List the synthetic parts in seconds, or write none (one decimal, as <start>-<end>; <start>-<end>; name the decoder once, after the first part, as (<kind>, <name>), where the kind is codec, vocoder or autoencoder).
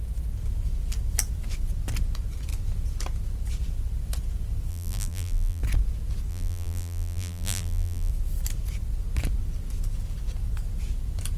4.7-5.6 (vocoder, BigVGAN v2); 6.3-8.1